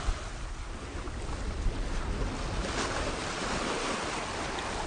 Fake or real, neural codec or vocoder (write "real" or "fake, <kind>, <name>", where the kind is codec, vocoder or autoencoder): real